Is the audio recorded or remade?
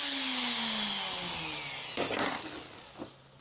recorded